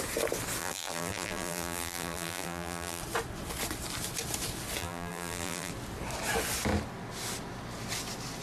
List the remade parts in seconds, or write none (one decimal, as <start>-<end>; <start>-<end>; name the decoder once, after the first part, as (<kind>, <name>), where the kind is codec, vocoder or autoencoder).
0.6-3.0 (vocoder, BigVGAN v2); 4.8-5.7